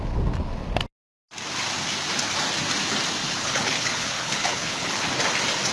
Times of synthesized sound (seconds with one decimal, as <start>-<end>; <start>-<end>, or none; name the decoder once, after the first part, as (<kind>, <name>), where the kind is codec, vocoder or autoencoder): 3.2-5.1 (codec, HILCodec)